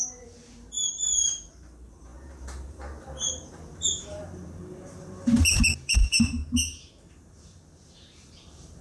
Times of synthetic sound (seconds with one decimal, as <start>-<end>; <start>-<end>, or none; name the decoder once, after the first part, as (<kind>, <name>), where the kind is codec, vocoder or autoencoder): 0.0-6.4 (vocoder, BigVGAN v2); 7.1-8.8